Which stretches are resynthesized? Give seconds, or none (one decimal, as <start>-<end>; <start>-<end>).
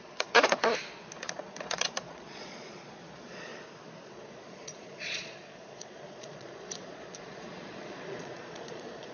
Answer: 0.0-0.6; 1.2-3.5; 4.0-9.1